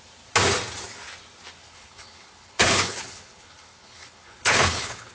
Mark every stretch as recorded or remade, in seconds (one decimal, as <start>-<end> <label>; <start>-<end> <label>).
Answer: 0.0-1.6 recorded; 1.6-5.1 remade